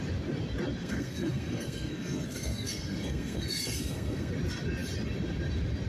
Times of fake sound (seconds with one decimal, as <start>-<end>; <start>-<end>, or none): 0.8-4.3